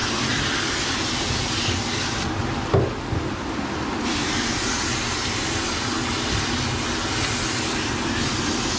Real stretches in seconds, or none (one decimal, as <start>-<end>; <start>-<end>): 0.0-8.8